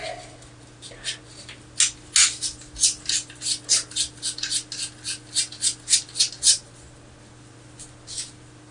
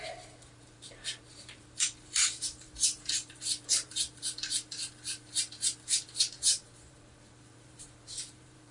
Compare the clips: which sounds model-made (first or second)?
second